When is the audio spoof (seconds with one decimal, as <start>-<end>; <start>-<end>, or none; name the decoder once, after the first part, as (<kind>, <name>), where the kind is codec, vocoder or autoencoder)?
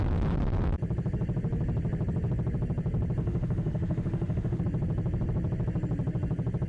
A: 3.2-4.6 (autoencoder, DAC-VAE)